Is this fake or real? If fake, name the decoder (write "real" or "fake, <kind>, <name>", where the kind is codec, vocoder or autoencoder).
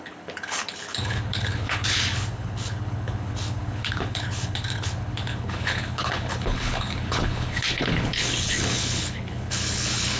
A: fake, codec, HILCodec